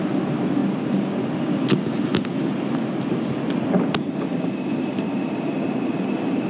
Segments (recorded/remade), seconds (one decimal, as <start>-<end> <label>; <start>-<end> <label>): 0.0-6.5 recorded